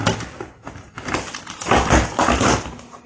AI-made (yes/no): no